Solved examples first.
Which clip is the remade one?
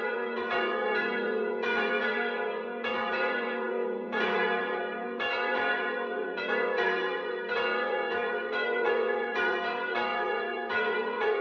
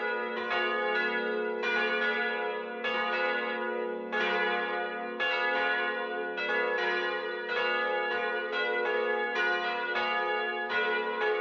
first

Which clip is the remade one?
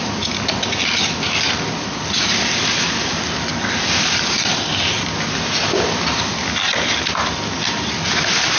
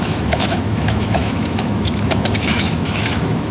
second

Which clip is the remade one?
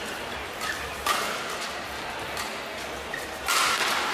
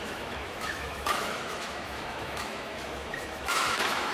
second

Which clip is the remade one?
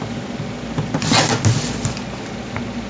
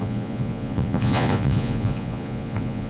second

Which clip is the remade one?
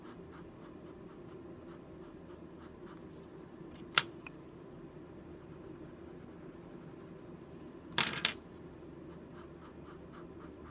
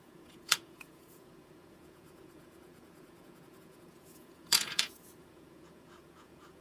second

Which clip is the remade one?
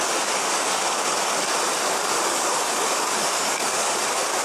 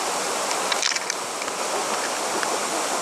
first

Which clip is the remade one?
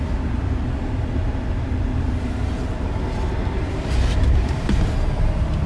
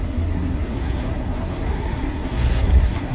second